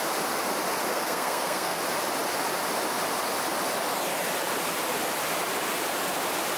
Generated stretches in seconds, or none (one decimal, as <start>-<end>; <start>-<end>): 0.9-1.8